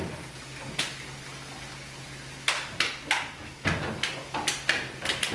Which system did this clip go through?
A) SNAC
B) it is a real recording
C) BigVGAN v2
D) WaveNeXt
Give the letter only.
B